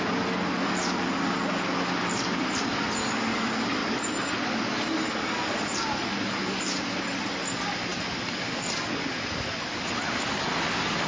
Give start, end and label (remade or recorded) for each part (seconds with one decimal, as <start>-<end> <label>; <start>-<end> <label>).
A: 0.0-11.1 recorded